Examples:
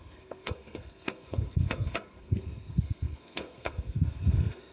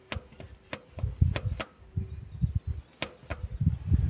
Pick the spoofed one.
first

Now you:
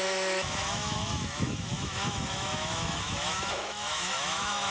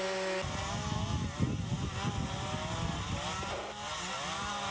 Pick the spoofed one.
first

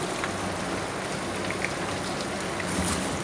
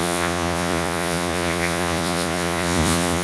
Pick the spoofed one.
second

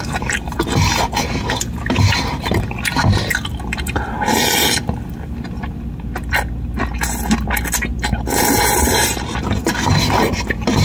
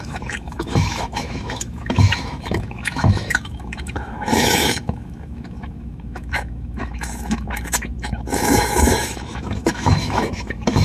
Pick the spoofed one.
second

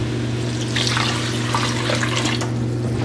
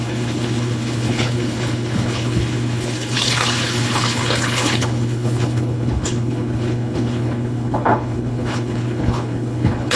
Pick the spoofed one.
second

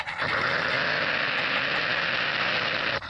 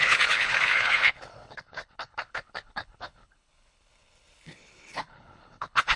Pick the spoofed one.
second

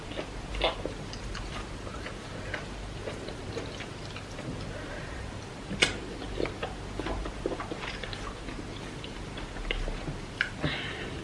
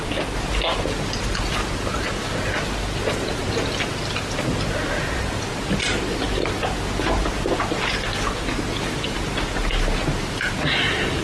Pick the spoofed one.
first